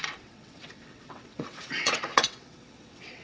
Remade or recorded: remade